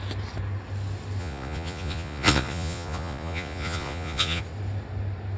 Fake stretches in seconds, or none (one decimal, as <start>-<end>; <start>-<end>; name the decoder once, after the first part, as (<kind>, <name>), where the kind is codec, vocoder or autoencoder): 1.2-4.4 (vocoder, Vocos)

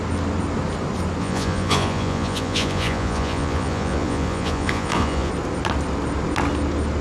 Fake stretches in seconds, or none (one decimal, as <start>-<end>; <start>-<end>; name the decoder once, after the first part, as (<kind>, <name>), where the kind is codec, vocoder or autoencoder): 1.2-5.3 (vocoder, Vocos)